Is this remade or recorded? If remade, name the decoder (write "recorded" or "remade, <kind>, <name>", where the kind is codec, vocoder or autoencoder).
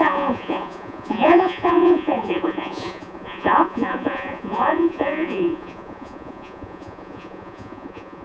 remade, vocoder, Vocos